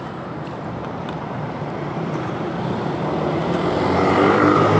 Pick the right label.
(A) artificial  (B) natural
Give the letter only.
A